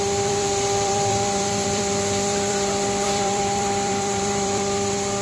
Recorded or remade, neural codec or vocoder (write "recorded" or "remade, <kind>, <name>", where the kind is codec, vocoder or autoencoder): remade, vocoder, BigVGAN v2